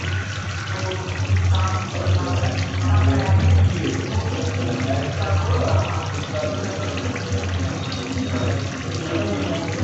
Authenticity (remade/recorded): recorded